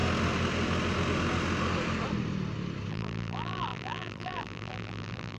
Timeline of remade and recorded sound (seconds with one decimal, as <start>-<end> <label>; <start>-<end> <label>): 0.0-2.9 recorded; 2.9-5.4 remade